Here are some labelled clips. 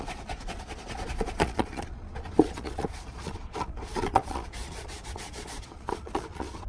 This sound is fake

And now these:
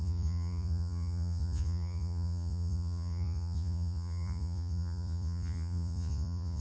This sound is fake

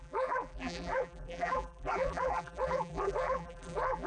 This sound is fake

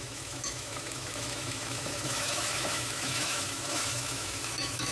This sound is fake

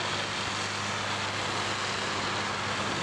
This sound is real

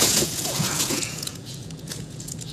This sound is fake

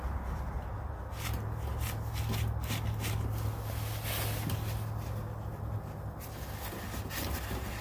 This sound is real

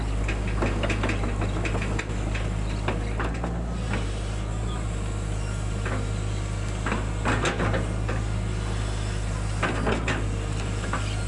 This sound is real